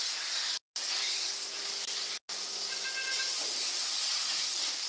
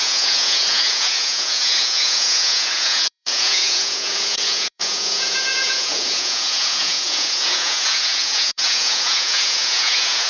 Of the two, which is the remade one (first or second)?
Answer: second